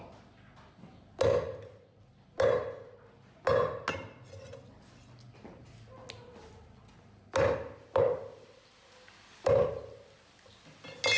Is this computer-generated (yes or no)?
no